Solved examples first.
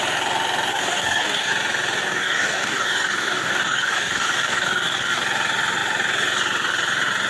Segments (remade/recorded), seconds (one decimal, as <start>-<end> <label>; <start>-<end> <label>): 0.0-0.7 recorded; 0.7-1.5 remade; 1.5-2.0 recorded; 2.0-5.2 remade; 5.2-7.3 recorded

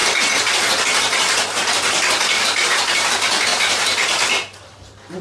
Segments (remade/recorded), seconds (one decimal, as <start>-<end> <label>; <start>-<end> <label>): 0.0-3.5 recorded; 3.5-4.8 remade; 4.8-5.2 recorded

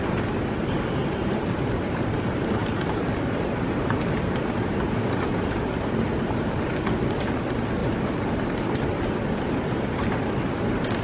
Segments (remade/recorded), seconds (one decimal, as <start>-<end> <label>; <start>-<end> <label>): 0.0-1.0 recorded; 1.0-1.7 remade; 1.7-2.6 recorded; 2.6-6.7 remade; 6.7-11.0 recorded

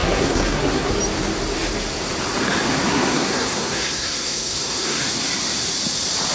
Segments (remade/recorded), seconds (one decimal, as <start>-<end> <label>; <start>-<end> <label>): 0.0-0.9 remade; 0.9-2.9 recorded; 2.9-5.0 remade; 5.0-6.3 recorded